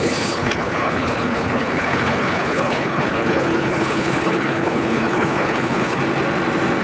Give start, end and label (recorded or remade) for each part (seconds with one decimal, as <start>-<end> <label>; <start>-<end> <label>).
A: 0.0-6.0 remade; 6.0-6.8 recorded